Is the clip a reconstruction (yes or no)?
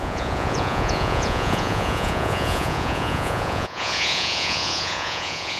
yes